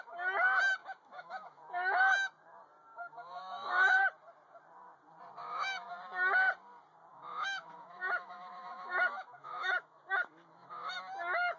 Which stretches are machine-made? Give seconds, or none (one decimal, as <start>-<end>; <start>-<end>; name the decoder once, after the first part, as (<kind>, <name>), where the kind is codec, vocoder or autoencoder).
0.8-2.0 (autoencoder, DAC-VAE); 2.9-4.0; 5.4-5.9; 7.1-11.0